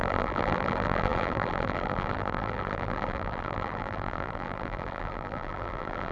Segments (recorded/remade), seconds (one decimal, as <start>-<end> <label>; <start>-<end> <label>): 0.0-6.1 remade